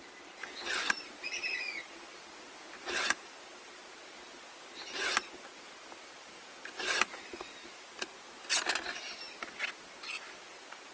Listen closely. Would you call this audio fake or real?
real